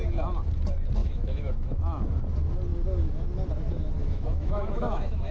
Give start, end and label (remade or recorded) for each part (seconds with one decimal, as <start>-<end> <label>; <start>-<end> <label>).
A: 0.0-1.0 recorded; 1.0-1.8 remade; 1.8-4.0 recorded; 4.0-5.3 remade